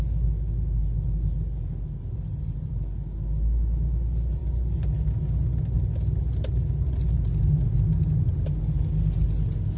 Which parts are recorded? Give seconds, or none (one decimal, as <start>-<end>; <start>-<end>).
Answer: 0.0-9.8